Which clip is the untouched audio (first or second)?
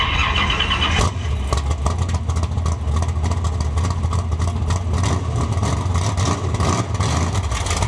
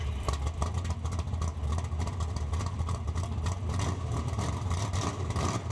first